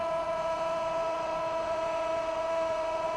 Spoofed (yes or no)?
yes